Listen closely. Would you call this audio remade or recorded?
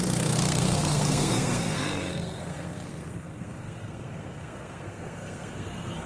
remade